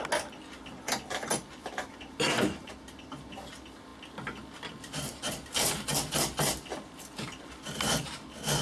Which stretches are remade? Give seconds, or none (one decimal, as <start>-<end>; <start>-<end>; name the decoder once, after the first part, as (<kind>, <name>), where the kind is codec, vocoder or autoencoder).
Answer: 1.6-2.7 (vocoder, BigVGAN v2)